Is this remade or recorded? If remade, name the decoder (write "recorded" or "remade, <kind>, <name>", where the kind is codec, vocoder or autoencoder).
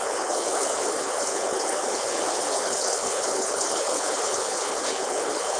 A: remade, codec, HILCodec